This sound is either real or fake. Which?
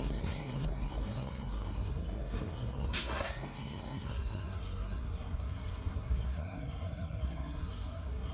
fake